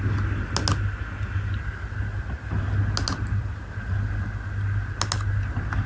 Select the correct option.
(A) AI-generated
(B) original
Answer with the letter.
B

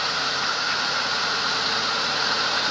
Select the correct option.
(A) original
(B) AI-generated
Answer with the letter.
B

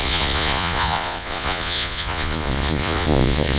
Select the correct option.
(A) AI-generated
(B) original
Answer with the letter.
A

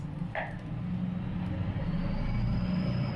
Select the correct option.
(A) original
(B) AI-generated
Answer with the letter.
A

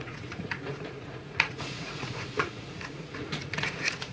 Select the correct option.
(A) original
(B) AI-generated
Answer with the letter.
B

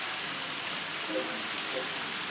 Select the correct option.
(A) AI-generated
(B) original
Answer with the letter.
B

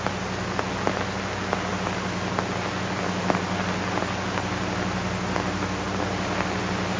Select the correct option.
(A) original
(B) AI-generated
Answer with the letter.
A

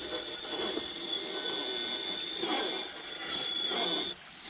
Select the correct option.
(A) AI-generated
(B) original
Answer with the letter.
B